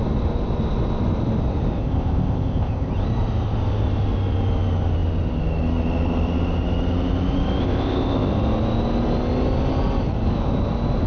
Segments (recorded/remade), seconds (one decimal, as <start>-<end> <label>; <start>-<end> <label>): 0.0-1.8 recorded; 1.8-2.9 remade; 2.9-7.6 recorded; 7.6-8.3 remade; 8.3-11.1 recorded